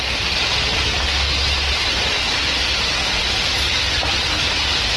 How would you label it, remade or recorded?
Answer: recorded